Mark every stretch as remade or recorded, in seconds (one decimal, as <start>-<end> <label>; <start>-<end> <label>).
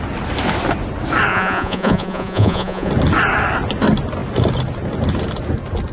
0.0-1.3 recorded; 1.3-2.9 remade; 2.9-5.9 recorded